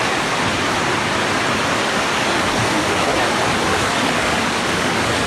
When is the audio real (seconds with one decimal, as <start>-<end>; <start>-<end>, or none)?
0.5-1.7; 3.1-3.6